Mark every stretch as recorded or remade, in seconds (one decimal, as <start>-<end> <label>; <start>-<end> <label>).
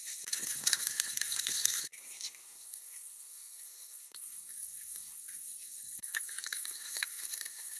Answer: 0.0-7.8 remade